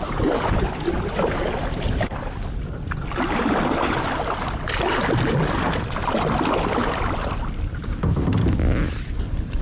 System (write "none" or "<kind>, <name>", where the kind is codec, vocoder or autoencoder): none